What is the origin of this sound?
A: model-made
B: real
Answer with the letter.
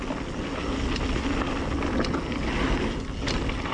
B